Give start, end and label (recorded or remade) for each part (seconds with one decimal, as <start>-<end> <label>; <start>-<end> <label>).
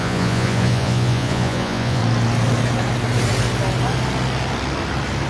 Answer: 0.0-2.0 remade; 2.0-5.3 recorded